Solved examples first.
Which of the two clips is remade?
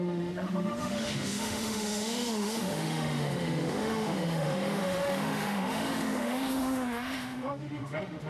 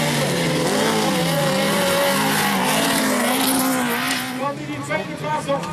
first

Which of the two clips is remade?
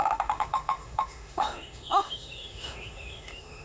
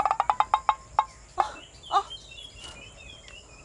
first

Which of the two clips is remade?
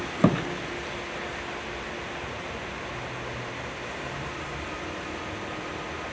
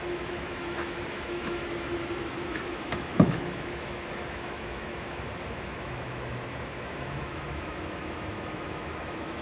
second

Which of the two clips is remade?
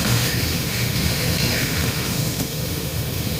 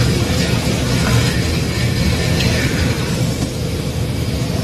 first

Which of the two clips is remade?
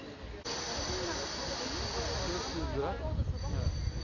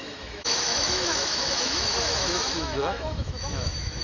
second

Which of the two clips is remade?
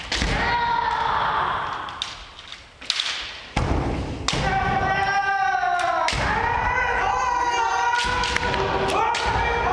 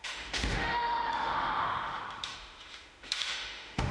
second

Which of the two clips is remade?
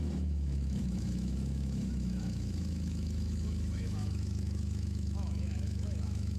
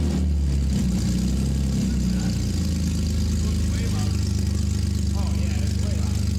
first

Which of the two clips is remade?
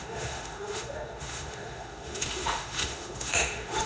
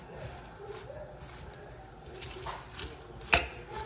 first